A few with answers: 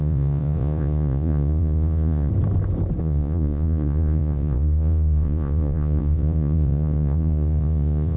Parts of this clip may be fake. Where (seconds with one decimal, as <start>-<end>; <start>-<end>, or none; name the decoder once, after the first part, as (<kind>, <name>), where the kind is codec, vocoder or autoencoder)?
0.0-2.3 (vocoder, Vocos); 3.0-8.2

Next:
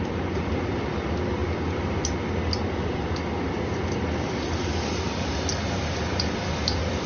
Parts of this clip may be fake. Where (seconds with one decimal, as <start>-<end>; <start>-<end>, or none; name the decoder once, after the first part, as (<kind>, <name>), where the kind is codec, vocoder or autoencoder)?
none

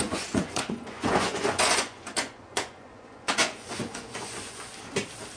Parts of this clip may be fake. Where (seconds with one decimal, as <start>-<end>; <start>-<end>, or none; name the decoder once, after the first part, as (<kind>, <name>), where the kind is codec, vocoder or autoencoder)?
0.0-4.7 (vocoder, Vocos)